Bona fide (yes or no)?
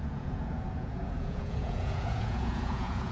no